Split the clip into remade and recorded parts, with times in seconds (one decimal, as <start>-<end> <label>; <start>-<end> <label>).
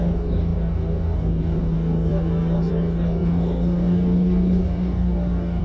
0.0-5.6 remade